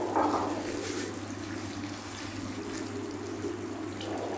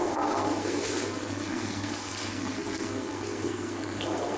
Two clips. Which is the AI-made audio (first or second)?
second